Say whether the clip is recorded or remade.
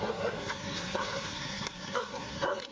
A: remade